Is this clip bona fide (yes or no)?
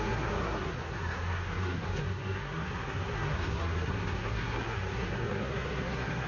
no